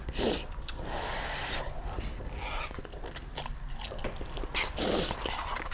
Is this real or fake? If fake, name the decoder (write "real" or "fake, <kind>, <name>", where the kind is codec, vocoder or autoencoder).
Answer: real